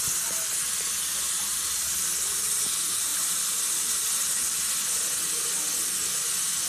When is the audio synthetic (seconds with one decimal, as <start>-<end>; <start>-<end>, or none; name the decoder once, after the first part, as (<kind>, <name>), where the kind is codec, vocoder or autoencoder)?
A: 1.1-1.7 (vocoder, BigVGAN v2); 3.1-4.3